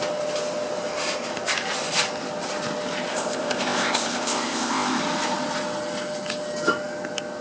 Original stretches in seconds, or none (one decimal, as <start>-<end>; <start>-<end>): 0.0-3.1; 5.0-7.4